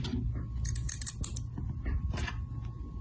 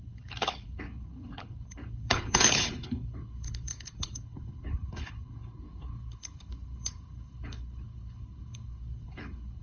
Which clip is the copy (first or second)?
second